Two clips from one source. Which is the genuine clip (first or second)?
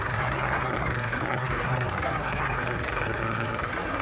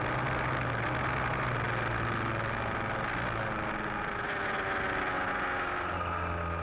second